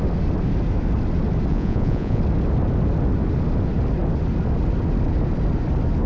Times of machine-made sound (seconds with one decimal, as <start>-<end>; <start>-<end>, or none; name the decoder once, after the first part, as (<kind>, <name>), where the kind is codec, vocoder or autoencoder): 1.5-2.2 (vocoder, Vocos)